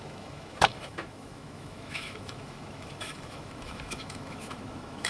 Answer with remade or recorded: remade